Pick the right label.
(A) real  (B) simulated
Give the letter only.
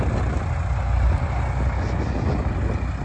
A